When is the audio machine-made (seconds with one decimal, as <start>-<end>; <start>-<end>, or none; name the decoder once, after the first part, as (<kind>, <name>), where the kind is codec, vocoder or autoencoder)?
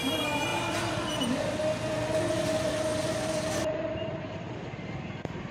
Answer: none